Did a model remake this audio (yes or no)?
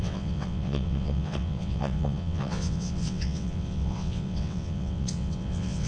yes